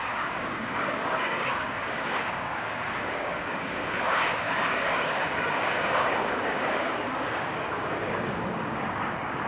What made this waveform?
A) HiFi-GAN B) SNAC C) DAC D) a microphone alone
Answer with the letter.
C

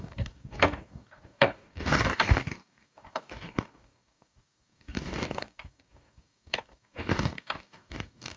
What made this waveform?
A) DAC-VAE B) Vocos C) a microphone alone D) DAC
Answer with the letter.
D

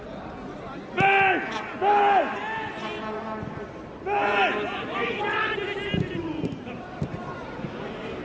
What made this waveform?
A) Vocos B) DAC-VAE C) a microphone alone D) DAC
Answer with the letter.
C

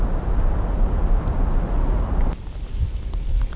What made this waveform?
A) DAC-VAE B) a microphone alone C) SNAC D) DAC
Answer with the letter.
B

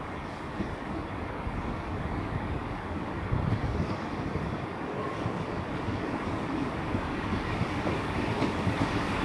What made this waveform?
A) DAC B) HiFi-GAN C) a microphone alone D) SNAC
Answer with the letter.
A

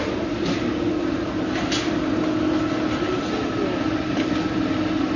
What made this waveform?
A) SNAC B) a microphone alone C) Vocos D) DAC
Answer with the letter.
B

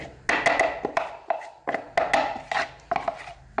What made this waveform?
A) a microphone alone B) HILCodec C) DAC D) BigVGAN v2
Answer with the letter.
A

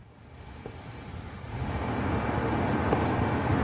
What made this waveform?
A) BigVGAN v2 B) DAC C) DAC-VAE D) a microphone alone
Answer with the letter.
D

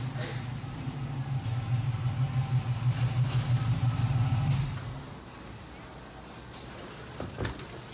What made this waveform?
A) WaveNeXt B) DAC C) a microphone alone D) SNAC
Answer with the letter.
C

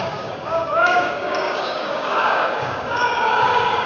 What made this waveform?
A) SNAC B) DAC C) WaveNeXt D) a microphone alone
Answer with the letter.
B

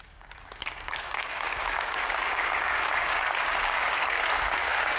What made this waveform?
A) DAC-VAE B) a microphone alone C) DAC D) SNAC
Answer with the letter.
C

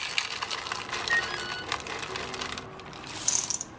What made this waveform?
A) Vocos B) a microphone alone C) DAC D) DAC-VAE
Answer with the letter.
B